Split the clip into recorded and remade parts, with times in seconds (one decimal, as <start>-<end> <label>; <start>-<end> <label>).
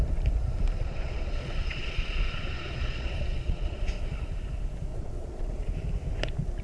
0.0-0.8 recorded; 0.8-3.8 remade; 3.8-4.9 recorded; 4.9-5.7 remade; 5.7-6.6 recorded